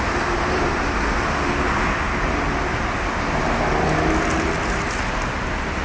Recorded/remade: recorded